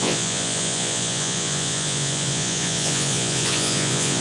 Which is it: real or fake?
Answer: fake